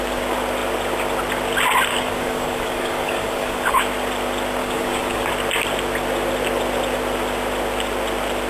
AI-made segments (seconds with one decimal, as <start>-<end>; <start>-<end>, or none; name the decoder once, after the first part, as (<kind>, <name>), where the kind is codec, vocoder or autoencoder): 1.9-3.8 (codec, DAC); 4.6-5.3